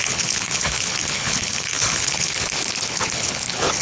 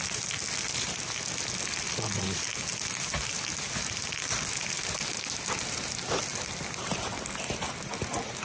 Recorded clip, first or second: second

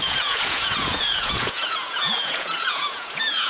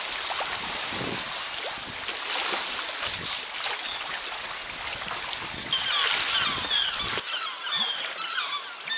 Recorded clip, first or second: second